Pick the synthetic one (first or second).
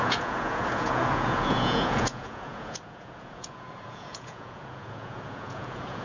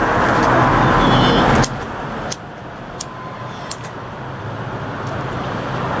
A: first